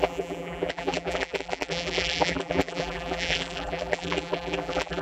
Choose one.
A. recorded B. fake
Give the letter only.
B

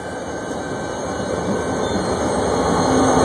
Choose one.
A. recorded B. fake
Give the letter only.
A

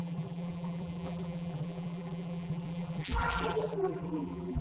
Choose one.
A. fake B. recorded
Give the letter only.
A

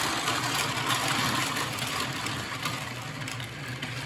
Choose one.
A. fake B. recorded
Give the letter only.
B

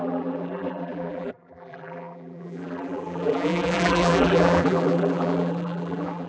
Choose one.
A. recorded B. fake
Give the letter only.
B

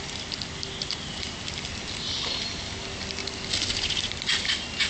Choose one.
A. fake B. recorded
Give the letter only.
B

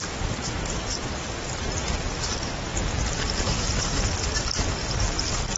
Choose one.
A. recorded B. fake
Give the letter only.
A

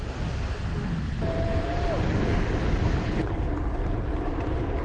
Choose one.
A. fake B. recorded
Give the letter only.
B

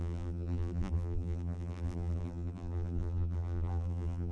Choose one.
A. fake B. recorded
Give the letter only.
A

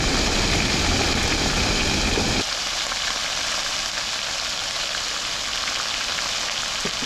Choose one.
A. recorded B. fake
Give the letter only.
A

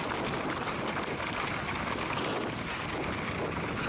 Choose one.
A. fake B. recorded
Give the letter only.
B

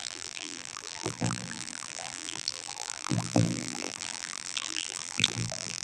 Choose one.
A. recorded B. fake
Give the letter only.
B